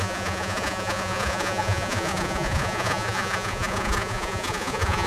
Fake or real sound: fake